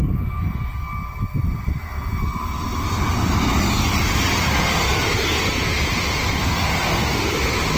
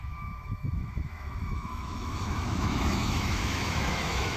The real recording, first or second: first